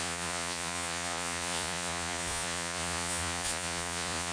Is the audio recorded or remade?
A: remade